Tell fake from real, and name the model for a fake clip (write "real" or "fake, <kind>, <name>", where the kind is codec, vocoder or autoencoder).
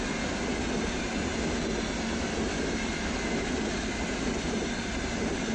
real